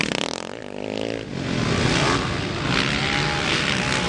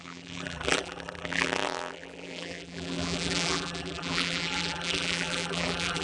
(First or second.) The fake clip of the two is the second